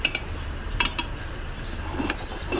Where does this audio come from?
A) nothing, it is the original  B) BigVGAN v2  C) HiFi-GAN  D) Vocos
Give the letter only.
B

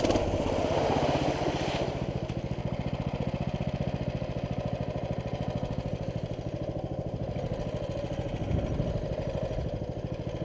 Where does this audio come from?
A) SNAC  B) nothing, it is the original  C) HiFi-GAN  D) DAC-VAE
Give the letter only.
B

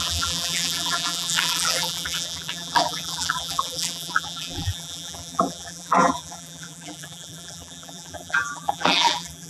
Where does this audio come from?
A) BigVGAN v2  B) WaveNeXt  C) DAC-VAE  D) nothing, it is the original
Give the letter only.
A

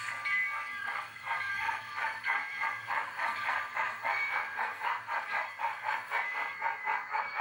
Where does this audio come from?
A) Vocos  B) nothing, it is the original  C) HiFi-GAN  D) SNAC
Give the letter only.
D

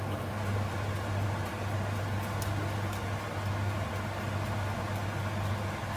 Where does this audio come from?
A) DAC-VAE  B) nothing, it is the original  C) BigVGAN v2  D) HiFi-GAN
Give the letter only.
B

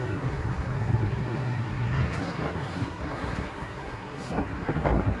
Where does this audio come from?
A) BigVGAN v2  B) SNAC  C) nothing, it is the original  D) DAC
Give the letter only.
B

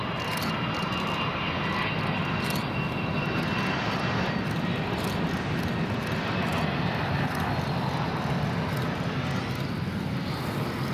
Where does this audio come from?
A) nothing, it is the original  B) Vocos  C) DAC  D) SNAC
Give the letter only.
A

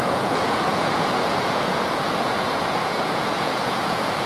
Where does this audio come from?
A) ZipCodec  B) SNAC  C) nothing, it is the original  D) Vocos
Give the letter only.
D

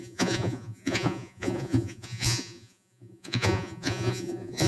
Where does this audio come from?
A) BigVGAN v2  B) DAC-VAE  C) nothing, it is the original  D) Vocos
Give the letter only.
D